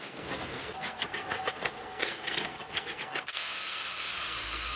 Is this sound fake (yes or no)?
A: yes